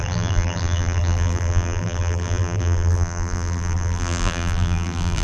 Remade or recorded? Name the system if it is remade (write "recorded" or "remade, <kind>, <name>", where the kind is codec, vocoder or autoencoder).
remade, vocoder, BigVGAN v2